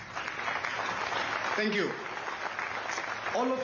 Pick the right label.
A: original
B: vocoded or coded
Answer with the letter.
A